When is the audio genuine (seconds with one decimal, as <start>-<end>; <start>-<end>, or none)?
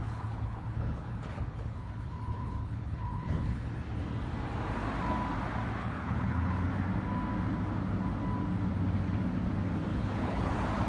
3.7-5.8; 6.7-9.9; 10.5-10.9